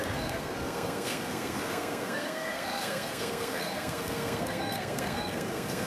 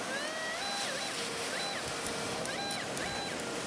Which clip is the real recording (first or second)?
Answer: second